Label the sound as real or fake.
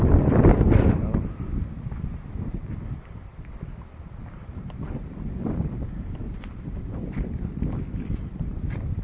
fake